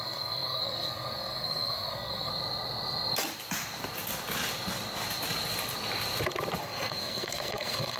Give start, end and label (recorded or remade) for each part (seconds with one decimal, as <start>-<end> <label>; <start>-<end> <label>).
0.0-2.3 remade; 2.3-6.6 recorded; 6.6-8.0 remade